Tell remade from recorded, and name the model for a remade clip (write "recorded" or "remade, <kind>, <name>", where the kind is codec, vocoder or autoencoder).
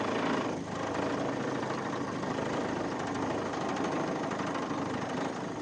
remade, vocoder, BigVGAN v2